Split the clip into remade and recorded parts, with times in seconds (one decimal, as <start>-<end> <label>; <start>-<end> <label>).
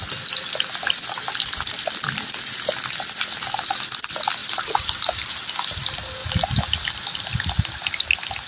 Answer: 0.0-4.4 recorded; 4.4-5.3 remade; 5.3-8.5 recorded